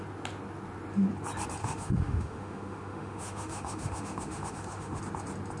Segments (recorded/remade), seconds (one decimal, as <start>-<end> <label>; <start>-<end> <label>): 0.0-1.6 recorded; 1.6-5.0 remade; 5.0-5.6 recorded